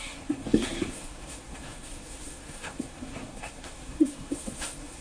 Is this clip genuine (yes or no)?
no